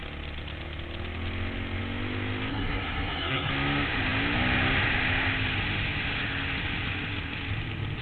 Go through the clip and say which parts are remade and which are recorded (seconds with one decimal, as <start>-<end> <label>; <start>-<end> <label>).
0.0-2.5 recorded; 2.5-3.5 remade; 3.5-8.0 recorded